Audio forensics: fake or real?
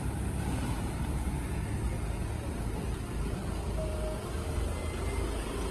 real